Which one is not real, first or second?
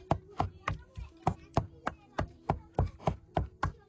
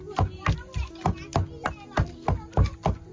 first